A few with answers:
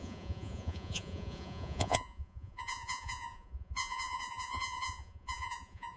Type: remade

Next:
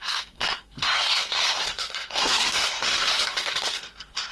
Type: remade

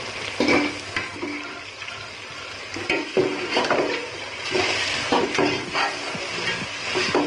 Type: recorded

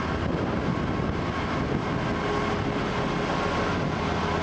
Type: recorded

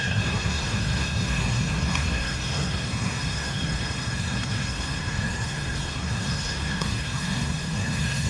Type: remade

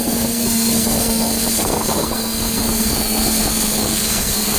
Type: remade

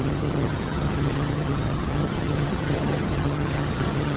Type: remade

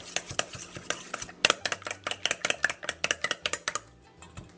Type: recorded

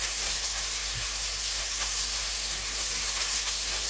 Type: remade